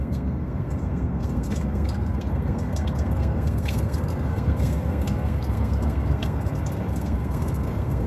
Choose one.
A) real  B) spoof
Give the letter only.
B